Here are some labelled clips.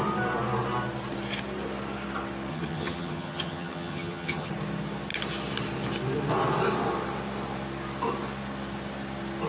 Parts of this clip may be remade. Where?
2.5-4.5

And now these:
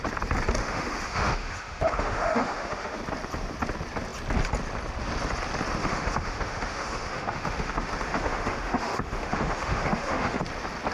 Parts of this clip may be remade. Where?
0.6-3.0; 5.8-10.4

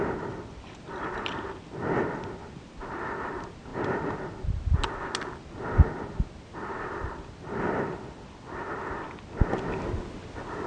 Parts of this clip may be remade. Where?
none

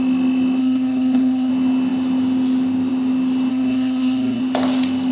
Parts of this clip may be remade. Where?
0.6-1.5; 3.5-4.4